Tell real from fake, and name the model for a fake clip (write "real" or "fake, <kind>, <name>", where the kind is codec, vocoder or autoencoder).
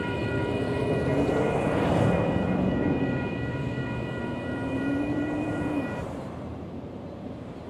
fake, vocoder, BigVGAN v2